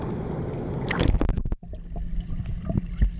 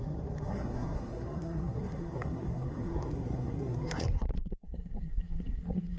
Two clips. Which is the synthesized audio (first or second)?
second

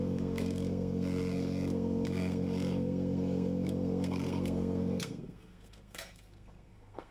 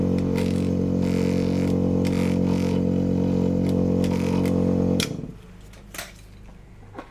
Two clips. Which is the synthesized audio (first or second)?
first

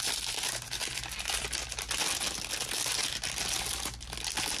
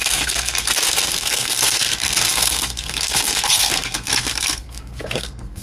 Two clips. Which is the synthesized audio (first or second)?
second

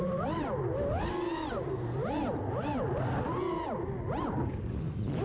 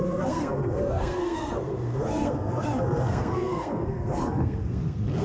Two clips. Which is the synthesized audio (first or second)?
second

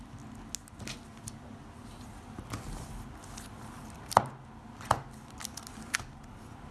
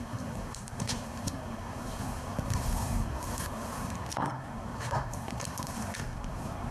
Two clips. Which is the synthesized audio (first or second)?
second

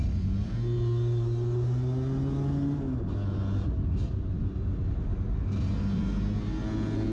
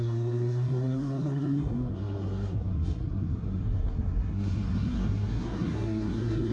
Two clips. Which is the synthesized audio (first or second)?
second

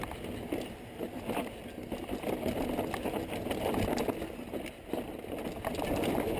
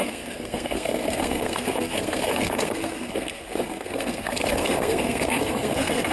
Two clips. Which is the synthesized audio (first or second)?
second